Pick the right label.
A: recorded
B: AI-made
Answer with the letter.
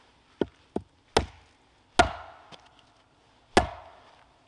A